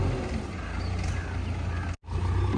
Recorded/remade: recorded